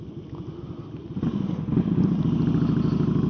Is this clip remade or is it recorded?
recorded